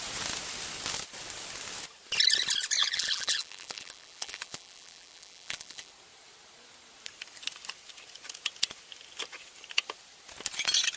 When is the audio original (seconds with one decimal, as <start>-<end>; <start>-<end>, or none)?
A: 0.0-2.8; 5.9-11.0